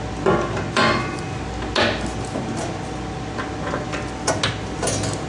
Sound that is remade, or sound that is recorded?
recorded